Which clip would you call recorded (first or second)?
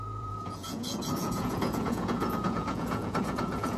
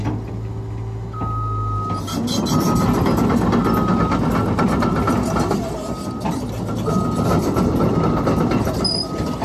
second